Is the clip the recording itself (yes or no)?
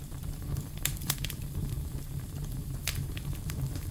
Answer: no